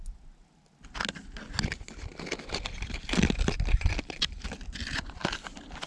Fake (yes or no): no